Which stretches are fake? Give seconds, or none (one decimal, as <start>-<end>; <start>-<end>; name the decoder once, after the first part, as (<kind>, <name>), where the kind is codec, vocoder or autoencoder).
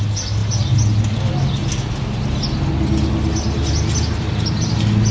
none